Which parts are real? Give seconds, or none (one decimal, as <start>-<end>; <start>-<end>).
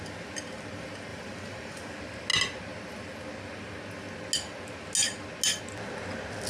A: 0.0-1.1; 1.9-6.5